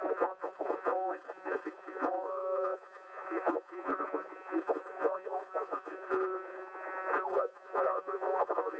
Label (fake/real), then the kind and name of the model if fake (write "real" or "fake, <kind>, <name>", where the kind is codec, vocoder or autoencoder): fake, vocoder, Vocos